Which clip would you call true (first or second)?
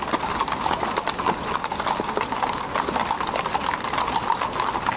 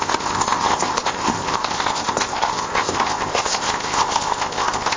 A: first